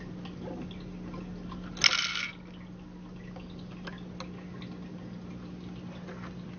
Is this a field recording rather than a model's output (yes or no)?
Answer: yes